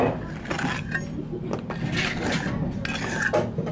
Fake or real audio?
real